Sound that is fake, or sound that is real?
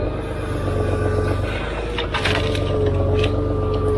real